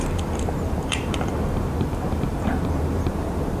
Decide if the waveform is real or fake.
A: fake